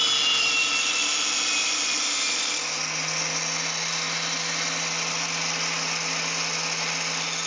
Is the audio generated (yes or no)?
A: no